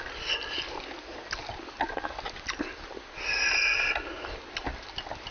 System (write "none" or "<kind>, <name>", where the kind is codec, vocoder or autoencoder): none